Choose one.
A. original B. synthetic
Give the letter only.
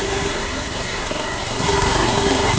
B